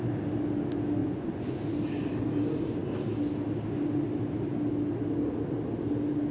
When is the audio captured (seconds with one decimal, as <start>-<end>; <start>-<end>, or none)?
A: 0.0-1.0; 1.6-6.3